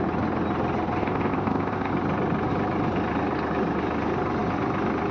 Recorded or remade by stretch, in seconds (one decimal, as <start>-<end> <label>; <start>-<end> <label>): 0.0-1.0 recorded; 1.0-1.9 remade; 1.9-5.1 recorded